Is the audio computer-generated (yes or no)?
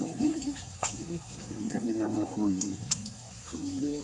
yes